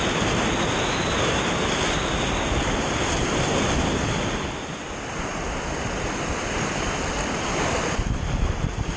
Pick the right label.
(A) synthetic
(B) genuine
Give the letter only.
B